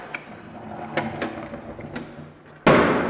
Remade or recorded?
recorded